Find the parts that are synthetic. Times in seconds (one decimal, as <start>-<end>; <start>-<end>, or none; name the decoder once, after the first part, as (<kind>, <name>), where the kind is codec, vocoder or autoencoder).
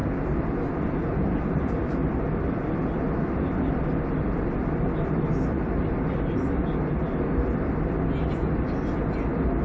none